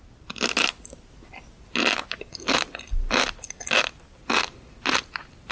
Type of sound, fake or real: real